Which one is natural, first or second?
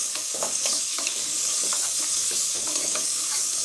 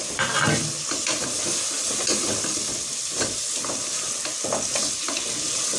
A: second